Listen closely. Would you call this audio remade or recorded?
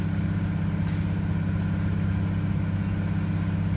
recorded